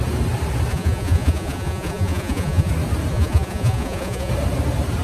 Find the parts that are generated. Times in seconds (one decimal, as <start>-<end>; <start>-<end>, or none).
0.7-2.7; 3.1-4.3

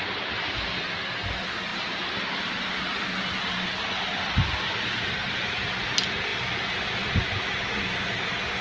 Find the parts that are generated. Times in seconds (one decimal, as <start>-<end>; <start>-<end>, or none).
none

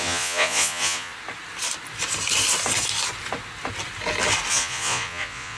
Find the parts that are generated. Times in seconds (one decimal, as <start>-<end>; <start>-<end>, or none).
0.0-1.1; 4.5-5.6

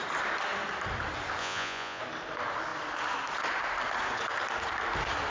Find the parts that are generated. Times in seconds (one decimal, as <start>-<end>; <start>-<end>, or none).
1.4-2.0

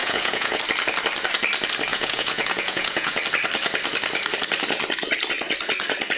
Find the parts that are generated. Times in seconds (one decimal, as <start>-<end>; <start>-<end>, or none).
0.0-0.6; 1.9-3.2

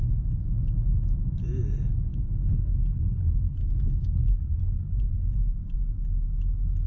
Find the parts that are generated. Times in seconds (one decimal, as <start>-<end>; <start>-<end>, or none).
2.1-3.7; 4.2-5.1

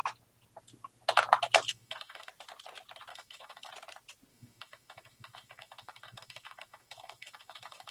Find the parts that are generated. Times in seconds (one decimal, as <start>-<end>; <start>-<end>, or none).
1.7-2.3; 3.1-3.7; 4.3-7.9

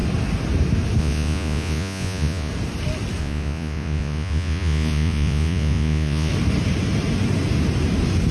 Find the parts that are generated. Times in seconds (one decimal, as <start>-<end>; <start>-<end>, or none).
1.0-2.5; 3.2-6.3